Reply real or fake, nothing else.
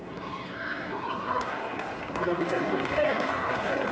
fake